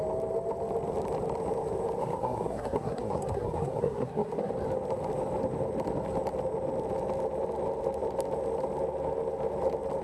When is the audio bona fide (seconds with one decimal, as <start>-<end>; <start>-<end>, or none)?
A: 0.0-2.0; 4.5-10.0